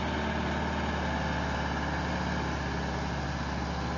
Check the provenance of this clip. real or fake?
real